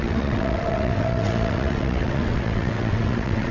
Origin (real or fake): fake